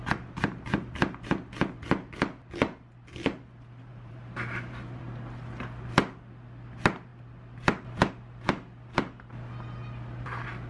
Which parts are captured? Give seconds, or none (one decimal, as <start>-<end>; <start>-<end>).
0.0-3.9; 5.0-10.7